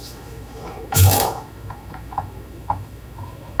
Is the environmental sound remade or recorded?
remade